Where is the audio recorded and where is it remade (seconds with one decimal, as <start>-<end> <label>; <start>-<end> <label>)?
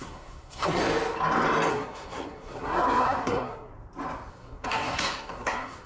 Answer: 0.0-0.8 remade; 0.8-1.7 recorded; 1.7-3.7 remade; 3.7-4.3 recorded; 4.3-5.9 remade